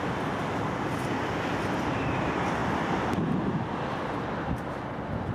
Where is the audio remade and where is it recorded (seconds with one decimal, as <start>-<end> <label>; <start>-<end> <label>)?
0.0-5.3 recorded